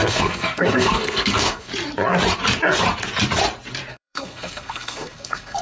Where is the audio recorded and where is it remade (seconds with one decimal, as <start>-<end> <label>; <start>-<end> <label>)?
0.0-1.7 remade; 1.7-3.9 recorded; 3.9-5.6 remade